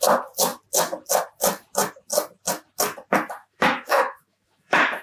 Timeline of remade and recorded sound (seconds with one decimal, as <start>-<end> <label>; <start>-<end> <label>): 0.0-3.4 recorded; 3.4-5.0 remade